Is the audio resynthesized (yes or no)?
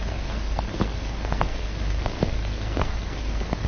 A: yes